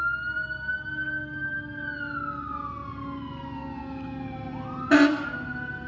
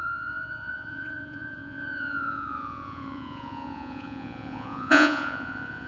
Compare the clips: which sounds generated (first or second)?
second